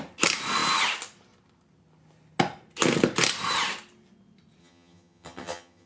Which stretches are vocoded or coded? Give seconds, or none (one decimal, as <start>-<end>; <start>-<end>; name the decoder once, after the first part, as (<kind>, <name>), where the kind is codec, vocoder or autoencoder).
4.6-5.9 (vocoder, HiFi-GAN)

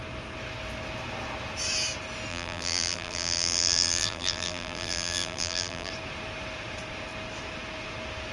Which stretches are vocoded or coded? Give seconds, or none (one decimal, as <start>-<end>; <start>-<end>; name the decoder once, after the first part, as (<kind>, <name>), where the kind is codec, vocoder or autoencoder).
2.3-5.9 (vocoder, BigVGAN v2)

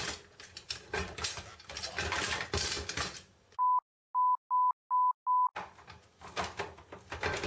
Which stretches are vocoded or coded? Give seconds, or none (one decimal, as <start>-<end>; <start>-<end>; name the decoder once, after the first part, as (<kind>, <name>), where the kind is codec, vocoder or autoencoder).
none

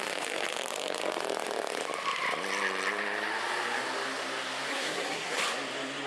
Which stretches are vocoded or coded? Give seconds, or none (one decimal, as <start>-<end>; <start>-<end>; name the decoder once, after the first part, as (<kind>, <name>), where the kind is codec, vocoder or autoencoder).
4.7-5.4 (codec, SNAC)

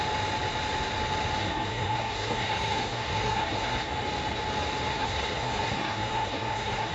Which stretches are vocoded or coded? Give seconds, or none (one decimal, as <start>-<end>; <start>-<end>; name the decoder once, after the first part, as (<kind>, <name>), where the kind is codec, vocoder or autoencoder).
1.4-3.9 (codec, SNAC); 4.9-6.9